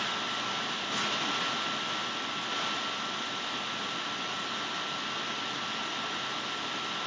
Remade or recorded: recorded